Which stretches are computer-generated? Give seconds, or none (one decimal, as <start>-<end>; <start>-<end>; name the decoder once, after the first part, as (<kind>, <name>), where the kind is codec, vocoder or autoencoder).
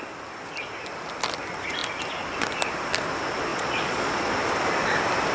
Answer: 3.5-4.3 (vocoder, Vocos)